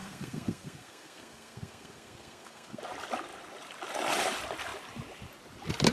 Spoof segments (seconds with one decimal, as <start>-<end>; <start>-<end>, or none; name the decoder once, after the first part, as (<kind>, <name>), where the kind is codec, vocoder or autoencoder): 0.0-2.8 (codec, SNAC)